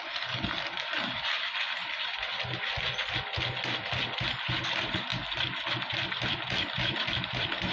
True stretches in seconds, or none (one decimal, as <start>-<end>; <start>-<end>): 0.0-7.7